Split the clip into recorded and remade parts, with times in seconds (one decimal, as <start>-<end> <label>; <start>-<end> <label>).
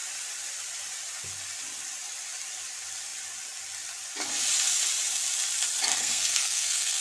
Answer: 0.0-5.9 recorded; 5.9-7.0 remade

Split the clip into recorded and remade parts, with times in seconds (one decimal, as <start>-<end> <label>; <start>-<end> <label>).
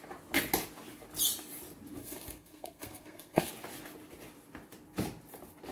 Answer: 0.0-2.0 recorded; 2.0-3.5 remade; 3.5-5.7 recorded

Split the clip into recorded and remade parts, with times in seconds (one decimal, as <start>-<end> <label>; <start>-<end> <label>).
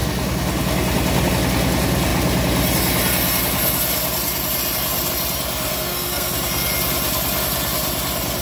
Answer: 0.0-5.7 recorded; 5.7-6.3 remade; 6.3-8.4 recorded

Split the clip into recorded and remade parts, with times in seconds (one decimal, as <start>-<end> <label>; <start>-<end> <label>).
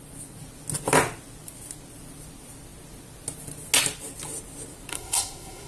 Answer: 0.0-4.9 recorded; 4.9-5.7 remade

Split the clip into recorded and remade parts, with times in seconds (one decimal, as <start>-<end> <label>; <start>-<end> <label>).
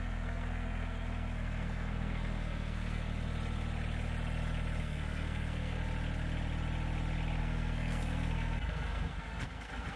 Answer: 0.0-3.1 remade; 3.1-4.8 recorded; 4.8-5.8 remade; 5.8-7.4 recorded; 7.4-10.0 remade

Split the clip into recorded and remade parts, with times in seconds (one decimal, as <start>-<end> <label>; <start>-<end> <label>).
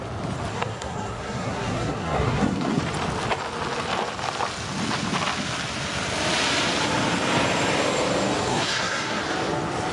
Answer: 0.0-0.5 recorded; 0.5-2.8 remade; 2.8-8.5 recorded; 8.5-9.2 remade; 9.2-9.9 recorded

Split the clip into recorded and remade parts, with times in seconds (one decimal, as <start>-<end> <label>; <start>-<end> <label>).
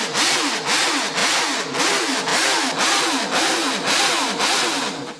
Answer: 0.0-5.2 recorded